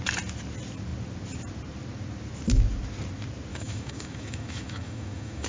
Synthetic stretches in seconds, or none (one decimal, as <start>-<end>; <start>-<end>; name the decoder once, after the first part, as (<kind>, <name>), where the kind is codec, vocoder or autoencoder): 3.5-5.5 (autoencoder, DAC-VAE)